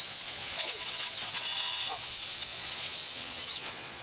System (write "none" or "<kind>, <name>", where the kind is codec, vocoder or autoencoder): vocoder, Vocos